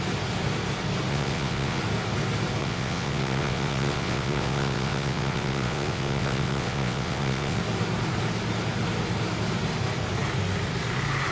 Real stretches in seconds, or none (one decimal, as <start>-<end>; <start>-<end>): 0.0-1.1; 1.8-2.6; 7.6-11.3